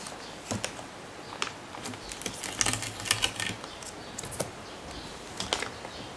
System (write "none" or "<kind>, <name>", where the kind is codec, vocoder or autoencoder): none